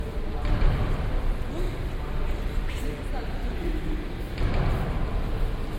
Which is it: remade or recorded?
recorded